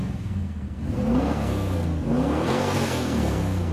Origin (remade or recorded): remade